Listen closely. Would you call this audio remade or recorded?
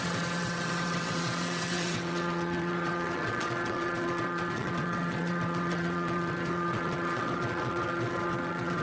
remade